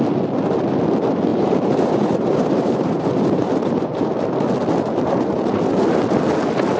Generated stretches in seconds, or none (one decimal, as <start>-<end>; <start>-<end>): 1.3-4.1